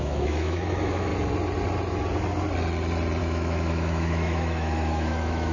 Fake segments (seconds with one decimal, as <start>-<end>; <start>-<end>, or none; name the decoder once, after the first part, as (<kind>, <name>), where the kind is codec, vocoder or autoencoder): 0.0-1.1 (autoencoder, DAC-VAE); 3.2-5.5